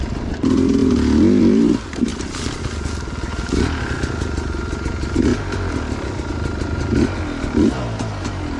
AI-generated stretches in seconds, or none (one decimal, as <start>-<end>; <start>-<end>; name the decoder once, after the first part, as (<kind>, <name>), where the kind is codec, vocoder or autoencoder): none